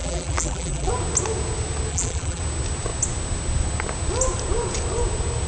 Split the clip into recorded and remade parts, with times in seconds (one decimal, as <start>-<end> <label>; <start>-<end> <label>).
0.0-0.9 remade; 0.9-1.9 recorded; 1.9-2.4 remade; 2.4-5.5 recorded